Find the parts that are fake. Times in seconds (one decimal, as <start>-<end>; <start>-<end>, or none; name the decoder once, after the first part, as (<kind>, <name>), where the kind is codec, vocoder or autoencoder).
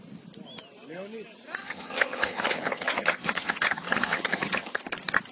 1.6-4.8 (vocoder, HiFi-GAN)